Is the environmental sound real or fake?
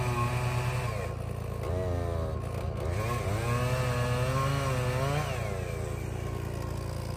real